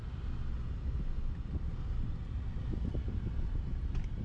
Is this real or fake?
real